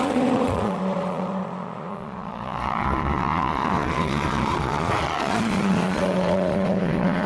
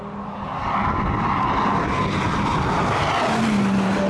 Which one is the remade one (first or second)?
first